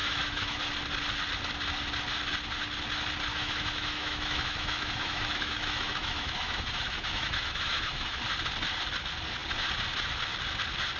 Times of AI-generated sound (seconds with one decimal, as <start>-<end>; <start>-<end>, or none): 0.0-0.6; 3.3-8.2